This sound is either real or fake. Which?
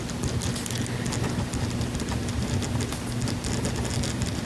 real